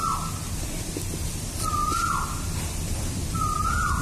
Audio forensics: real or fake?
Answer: real